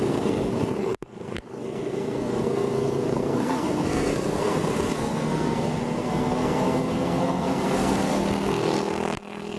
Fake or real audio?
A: fake